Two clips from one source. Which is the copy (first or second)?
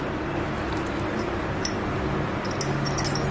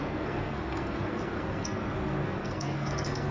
second